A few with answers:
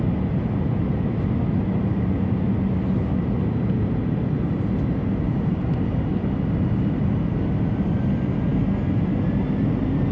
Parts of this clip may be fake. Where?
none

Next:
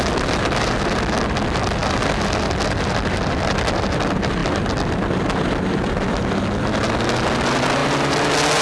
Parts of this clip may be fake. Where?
none